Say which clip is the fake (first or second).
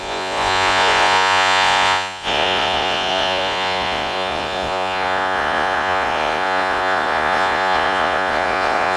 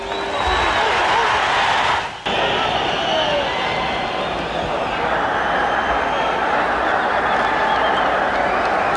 first